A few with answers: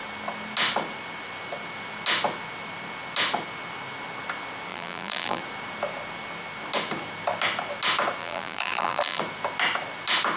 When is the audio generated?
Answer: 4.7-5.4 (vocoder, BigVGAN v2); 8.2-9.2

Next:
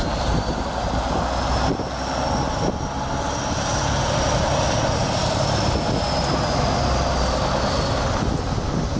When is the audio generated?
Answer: 0.0-1.0 (vocoder, BigVGAN v2); 3.8-4.6

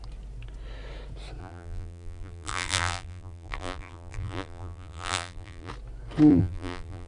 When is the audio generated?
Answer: 1.4-5.7 (vocoder, BigVGAN v2); 6.3-7.1

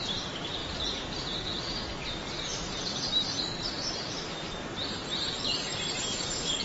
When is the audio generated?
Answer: 0.6-1.2 (vocoder, BigVGAN v2); 2.5-4.1; 5.0-5.7

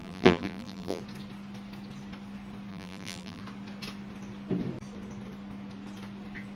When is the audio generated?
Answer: 0.0-1.0 (vocoder, BigVGAN v2); 2.7-3.4

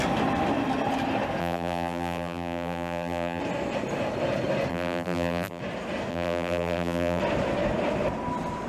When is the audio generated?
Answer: 1.4-3.4 (vocoder, BigVGAN v2); 4.7-5.6; 6.1-7.2

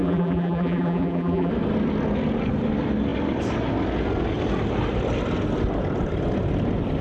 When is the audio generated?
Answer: 0.0-1.5 (vocoder, BigVGAN v2)

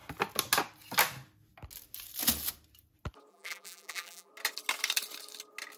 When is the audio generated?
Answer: 3.3-4.3 (vocoder, BigVGAN v2)